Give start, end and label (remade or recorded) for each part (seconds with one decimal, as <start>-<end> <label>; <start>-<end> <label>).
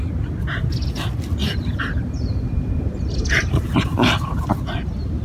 0.0-1.4 recorded; 1.4-4.5 remade; 4.5-5.2 recorded